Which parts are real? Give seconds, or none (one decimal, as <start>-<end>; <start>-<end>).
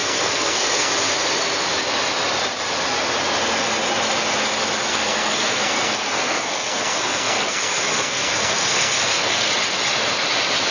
0.9-4.9; 9.5-10.7